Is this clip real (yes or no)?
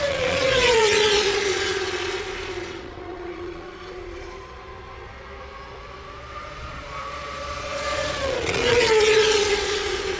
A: no